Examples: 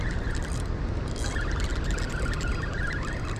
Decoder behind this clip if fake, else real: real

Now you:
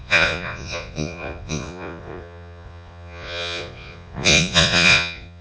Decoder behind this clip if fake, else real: fake, vocoder, Vocos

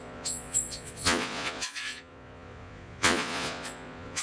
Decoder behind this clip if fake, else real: fake, vocoder, Vocos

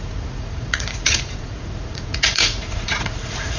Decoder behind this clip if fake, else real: fake, vocoder, Vocos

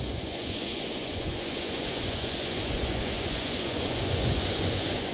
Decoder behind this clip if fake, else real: fake, vocoder, Vocos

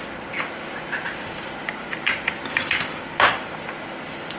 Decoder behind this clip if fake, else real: real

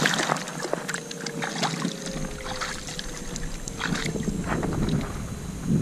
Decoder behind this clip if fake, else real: real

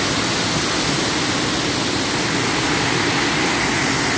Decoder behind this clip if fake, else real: real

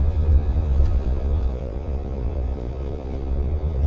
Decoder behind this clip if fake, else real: fake, vocoder, Vocos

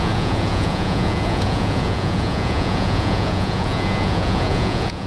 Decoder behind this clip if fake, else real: fake, vocoder, Vocos